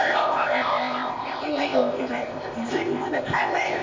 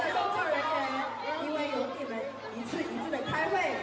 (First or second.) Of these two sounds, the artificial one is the first